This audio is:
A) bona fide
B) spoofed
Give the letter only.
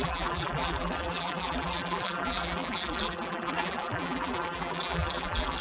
B